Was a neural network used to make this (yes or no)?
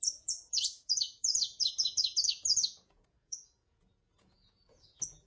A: yes